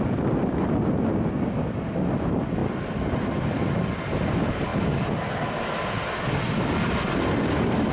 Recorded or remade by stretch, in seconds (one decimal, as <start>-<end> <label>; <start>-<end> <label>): 0.0-7.9 recorded